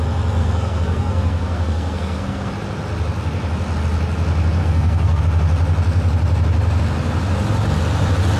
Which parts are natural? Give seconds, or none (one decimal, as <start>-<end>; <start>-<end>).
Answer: 0.0-0.4; 2.5-4.6; 5.2-8.4